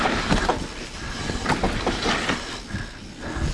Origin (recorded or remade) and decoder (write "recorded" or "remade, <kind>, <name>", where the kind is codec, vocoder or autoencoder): recorded